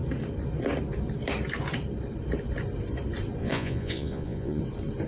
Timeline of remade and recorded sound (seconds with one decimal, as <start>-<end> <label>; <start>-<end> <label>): 0.0-3.4 recorded; 3.4-4.6 remade; 4.6-5.1 recorded